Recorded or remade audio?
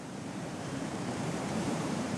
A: remade